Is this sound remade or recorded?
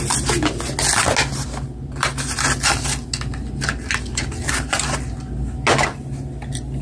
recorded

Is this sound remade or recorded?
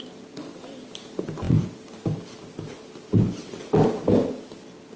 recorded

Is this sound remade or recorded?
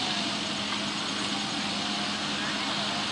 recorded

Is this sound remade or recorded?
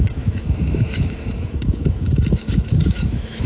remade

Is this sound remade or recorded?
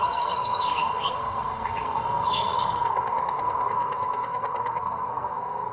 remade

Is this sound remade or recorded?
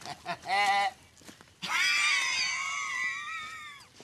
recorded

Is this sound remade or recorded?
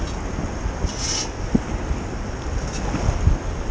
recorded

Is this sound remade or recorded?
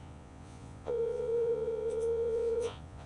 remade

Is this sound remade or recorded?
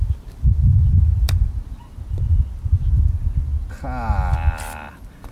recorded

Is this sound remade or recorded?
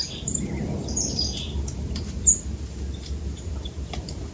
remade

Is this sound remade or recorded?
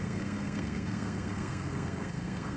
remade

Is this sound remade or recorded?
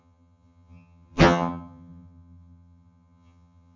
remade